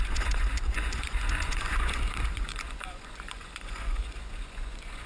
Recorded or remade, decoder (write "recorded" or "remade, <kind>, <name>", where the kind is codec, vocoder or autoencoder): remade, vocoder, Vocos